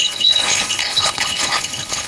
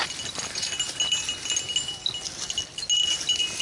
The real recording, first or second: second